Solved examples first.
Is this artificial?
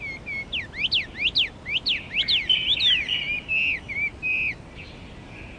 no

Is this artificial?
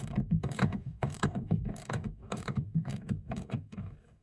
yes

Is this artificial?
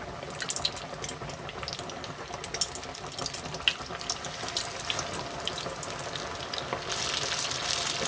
no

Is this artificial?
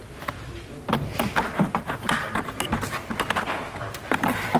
no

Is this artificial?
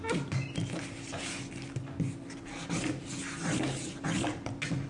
no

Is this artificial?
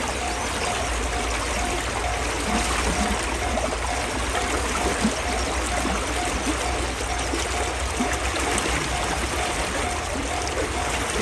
no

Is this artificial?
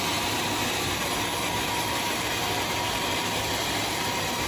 yes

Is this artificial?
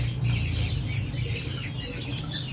no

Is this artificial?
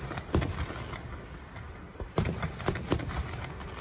no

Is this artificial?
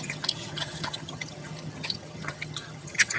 yes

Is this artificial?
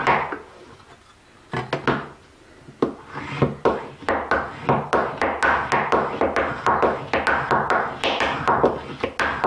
no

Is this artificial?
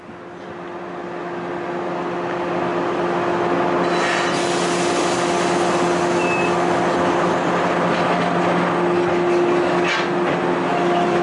no